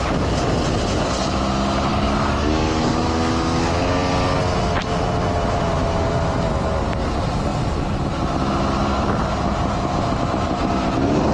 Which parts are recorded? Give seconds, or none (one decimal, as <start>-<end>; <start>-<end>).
0.0-1.9; 3.3-11.3